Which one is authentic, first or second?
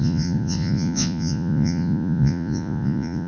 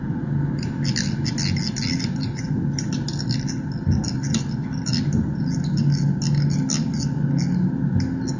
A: second